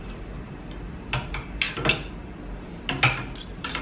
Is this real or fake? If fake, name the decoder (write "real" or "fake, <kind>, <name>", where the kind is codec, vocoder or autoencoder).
real